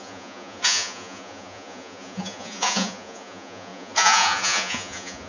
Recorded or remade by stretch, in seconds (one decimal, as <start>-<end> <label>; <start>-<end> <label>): 0.0-5.3 remade